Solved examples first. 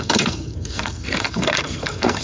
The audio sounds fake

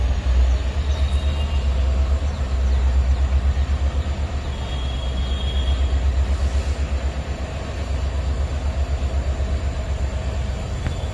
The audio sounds real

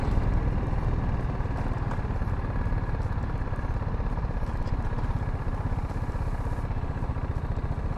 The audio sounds real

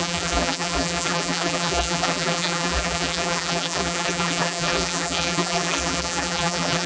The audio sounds fake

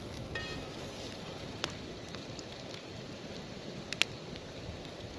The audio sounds real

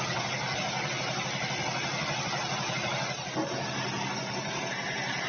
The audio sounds real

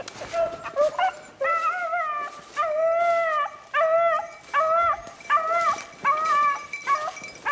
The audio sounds real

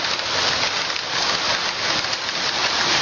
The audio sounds real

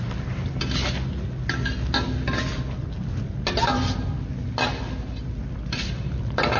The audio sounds real